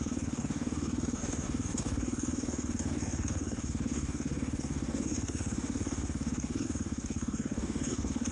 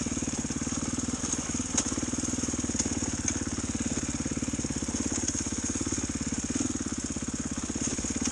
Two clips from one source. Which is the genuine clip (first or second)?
second